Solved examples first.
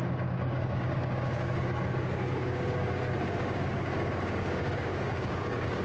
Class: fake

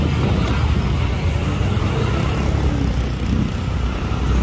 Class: real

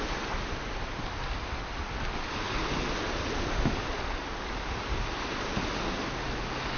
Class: real